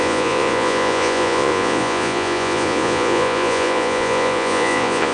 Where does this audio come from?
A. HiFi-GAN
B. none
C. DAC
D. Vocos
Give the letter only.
D